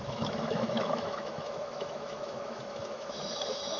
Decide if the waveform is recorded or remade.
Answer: remade